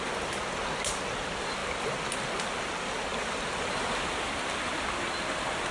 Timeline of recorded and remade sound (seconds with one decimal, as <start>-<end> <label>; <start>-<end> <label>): 0.0-5.7 recorded